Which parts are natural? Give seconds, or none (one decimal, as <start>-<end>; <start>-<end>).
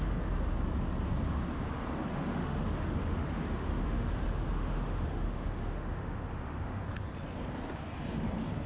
0.0-2.1; 6.8-8.7